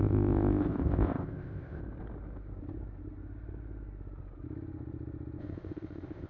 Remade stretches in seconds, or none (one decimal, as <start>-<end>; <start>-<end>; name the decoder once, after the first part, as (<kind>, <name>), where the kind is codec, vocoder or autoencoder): 0.0-1.8 (codec, ZipCodec); 5.4-6.3